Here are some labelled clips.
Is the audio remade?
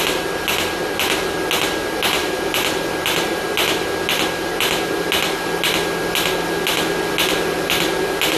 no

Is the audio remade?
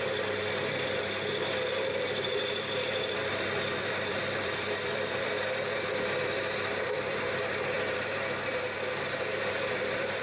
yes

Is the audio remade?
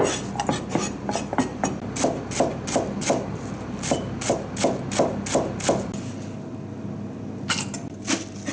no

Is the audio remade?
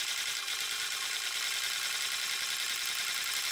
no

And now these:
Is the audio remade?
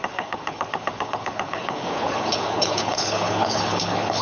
yes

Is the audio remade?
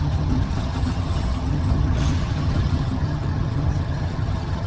yes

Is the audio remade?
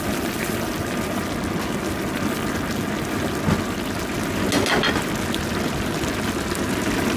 no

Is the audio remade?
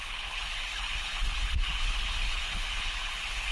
yes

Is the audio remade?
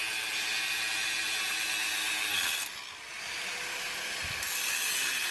no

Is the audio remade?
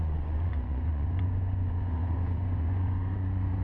yes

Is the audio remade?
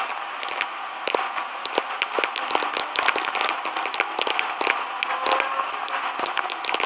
no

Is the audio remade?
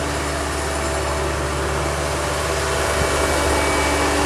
no